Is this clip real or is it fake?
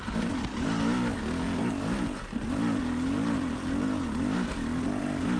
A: real